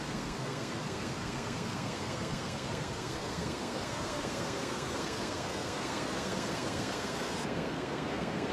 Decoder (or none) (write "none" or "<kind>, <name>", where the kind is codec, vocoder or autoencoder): codec, SNAC